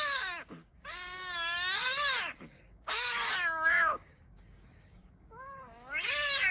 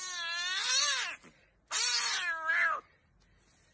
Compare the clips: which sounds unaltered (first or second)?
second